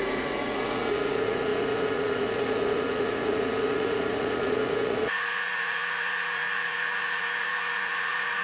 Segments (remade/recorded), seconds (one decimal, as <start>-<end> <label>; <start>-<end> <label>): 0.0-8.4 remade